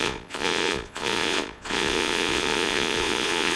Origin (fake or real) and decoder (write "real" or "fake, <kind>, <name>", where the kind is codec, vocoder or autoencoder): fake, vocoder, Vocos